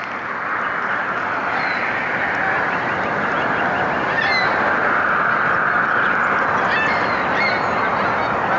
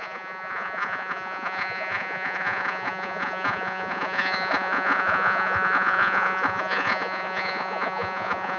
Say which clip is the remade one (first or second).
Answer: second